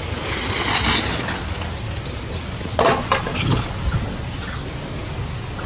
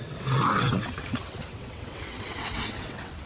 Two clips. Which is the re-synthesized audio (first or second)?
second